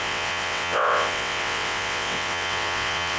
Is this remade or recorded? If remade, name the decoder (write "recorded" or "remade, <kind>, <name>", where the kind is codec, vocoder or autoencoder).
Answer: remade, vocoder, WaveNeXt